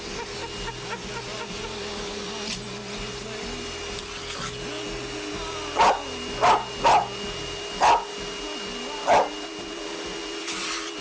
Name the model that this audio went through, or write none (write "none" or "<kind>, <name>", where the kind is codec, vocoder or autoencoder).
none